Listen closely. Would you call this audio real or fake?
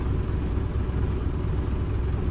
real